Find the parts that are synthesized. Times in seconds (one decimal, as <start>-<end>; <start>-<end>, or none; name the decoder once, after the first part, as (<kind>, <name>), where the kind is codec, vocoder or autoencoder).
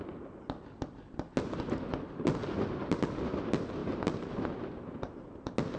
none